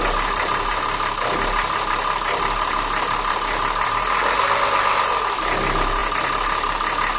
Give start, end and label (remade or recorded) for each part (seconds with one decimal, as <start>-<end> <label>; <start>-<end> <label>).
0.0-7.2 recorded